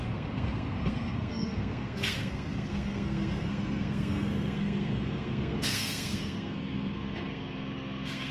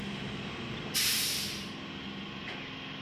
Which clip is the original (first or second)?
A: second